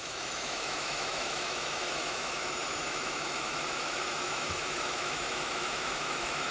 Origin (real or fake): fake